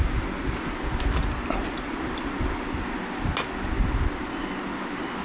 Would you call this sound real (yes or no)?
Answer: yes